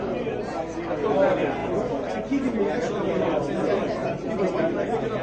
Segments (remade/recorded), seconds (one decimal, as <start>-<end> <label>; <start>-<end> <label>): 0.0-4.0 recorded; 4.0-4.5 remade; 4.5-5.2 recorded